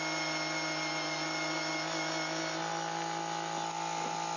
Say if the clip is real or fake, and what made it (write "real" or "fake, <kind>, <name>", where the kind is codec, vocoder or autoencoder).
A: real